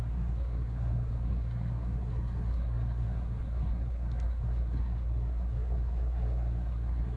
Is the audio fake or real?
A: fake